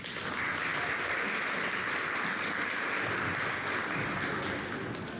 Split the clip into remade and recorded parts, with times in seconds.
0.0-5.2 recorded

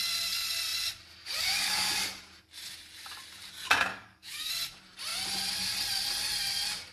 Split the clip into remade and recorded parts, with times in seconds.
0.0-1.2 recorded; 1.2-1.9 remade; 1.9-3.9 recorded; 3.9-4.5 remade; 4.5-6.9 recorded

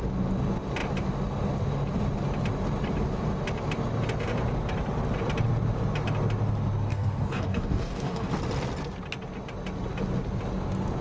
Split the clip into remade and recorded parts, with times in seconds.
0.0-6.9 recorded; 6.9-8.3 remade; 8.3-11.0 recorded

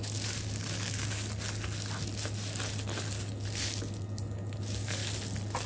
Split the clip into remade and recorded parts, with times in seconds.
0.0-1.2 remade; 1.2-4.6 recorded; 4.6-5.0 remade; 5.0-5.7 recorded

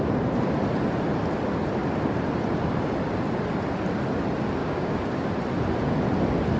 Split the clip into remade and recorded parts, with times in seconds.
0.0-4.6 recorded; 4.6-5.3 remade; 5.3-6.6 recorded